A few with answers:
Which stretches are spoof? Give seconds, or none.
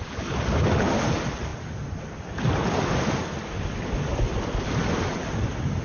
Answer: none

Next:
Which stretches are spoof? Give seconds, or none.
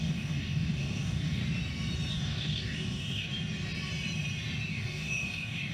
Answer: 0.0-1.4; 2.1-3.3; 4.7-5.7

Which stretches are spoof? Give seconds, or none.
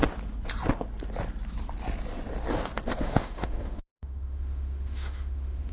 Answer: 3.0-5.7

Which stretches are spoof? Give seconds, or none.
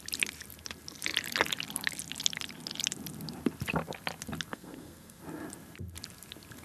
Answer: 4.5-5.2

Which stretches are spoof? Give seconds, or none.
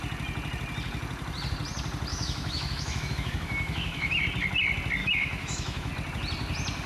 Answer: 2.1-4.2; 5.0-5.9